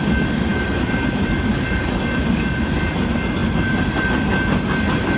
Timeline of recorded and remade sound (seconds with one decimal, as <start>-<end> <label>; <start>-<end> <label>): 0.0-0.5 recorded; 0.5-2.2 remade; 2.2-5.2 recorded